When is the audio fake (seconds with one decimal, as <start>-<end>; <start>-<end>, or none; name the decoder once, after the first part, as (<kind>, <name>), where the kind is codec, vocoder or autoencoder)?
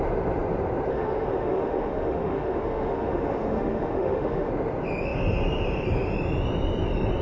0.9-4.5 (autoencoder, DAC-VAE)